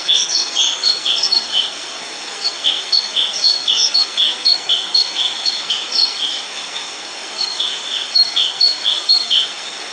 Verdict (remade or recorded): remade